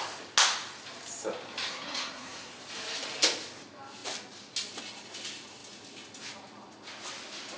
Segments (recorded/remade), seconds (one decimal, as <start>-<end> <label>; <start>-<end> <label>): 0.0-1.7 recorded; 1.7-2.5 remade; 2.5-7.6 recorded